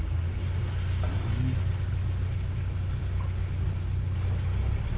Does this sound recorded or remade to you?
recorded